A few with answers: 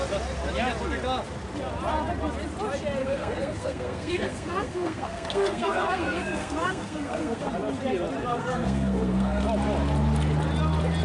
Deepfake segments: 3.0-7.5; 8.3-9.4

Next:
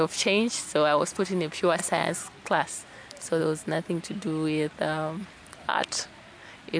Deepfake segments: 1.8-3.4; 5.2-5.7